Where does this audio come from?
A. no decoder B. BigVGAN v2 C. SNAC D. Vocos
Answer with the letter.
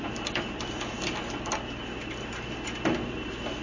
A